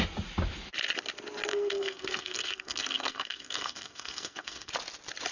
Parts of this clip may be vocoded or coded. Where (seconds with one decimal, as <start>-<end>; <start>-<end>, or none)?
1.5-4.7